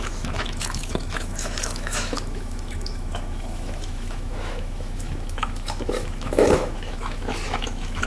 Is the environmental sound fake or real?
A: fake